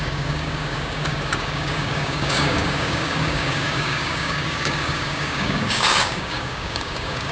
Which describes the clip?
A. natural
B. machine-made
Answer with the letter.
B